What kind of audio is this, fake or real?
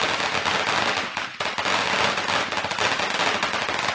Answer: real